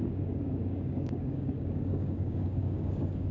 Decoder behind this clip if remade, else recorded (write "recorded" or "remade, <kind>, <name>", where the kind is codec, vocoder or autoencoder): remade, codec, DAC